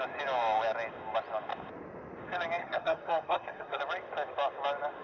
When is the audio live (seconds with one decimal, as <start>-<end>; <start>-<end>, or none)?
0.0-2.6; 3.8-5.0